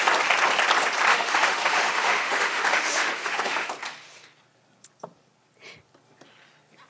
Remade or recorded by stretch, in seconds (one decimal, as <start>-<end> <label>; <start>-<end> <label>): 0.0-1.1 recorded; 1.1-3.7 remade; 3.7-6.9 recorded